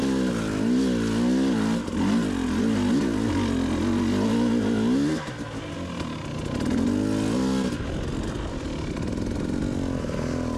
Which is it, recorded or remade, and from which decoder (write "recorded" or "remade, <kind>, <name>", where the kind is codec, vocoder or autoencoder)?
recorded